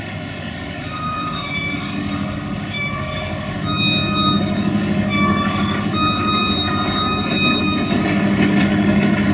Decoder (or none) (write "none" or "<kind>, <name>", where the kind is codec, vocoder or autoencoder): codec, DAC